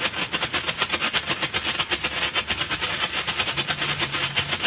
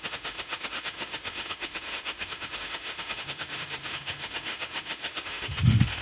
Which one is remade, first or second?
second